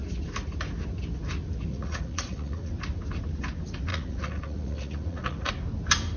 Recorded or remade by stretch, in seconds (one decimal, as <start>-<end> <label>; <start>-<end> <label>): 0.0-1.7 recorded; 1.7-2.7 remade; 2.7-3.9 recorded; 3.9-5.5 remade; 5.5-6.2 recorded